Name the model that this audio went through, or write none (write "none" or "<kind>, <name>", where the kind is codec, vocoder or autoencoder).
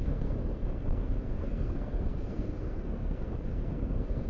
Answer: codec, SNAC